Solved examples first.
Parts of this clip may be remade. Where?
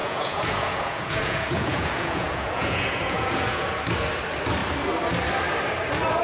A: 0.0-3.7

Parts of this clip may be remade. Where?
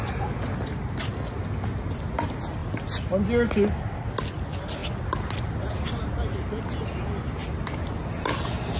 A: none